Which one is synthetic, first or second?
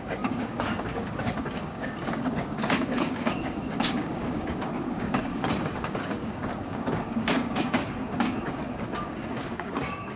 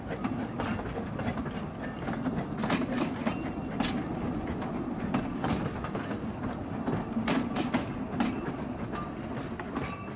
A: first